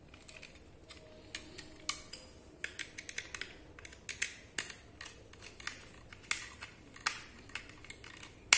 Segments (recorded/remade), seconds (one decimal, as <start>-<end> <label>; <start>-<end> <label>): 0.0-8.6 recorded